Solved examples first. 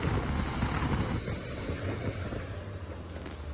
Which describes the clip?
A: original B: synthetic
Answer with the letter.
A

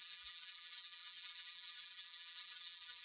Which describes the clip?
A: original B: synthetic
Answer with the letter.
B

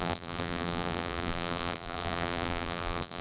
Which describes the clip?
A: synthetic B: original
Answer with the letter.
A